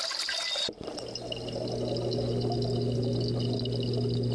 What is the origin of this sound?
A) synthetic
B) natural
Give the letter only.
B